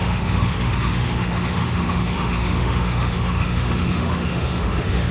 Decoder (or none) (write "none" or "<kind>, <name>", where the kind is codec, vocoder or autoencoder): autoencoder, DAC-VAE